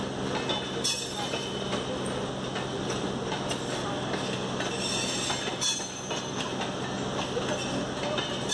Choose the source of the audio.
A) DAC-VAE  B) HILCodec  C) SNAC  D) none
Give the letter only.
D